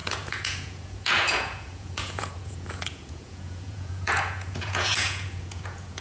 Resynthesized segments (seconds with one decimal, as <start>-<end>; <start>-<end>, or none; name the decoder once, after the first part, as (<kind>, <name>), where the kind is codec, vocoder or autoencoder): 0.0-6.0 (vocoder, Vocos)